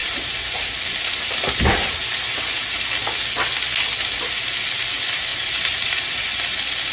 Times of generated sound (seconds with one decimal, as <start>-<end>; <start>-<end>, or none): 0.0-0.8; 5.3-6.3